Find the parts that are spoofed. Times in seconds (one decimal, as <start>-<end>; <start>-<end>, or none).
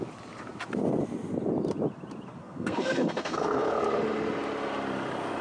2.4-3.7